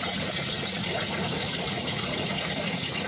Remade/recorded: remade